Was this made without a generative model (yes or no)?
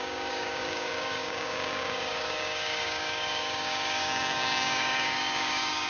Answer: no